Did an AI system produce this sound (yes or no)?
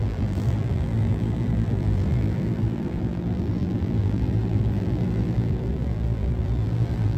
yes